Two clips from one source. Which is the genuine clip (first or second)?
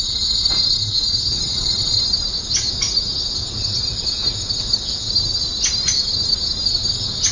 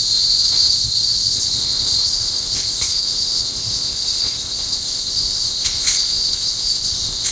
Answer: first